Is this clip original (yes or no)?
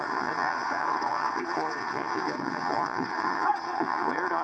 no